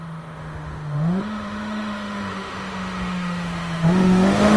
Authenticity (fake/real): fake